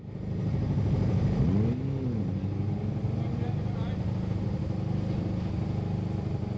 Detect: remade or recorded recorded